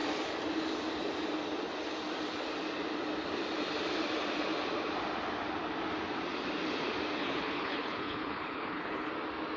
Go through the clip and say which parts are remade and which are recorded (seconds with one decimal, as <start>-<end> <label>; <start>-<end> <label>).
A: 0.0-7.2 recorded; 7.2-9.1 remade; 9.1-9.6 recorded